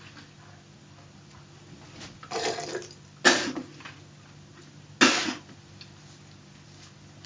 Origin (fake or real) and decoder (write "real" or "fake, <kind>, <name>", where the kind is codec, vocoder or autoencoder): real